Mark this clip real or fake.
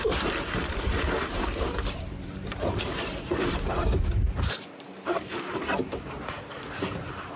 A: fake